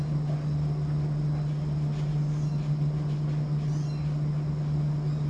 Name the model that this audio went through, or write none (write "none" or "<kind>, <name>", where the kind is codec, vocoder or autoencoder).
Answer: none